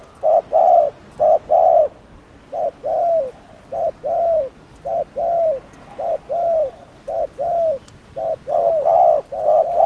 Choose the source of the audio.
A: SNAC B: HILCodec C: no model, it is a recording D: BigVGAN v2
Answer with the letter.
C